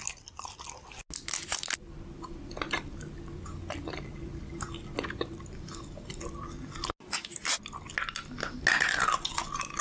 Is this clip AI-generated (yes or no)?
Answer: no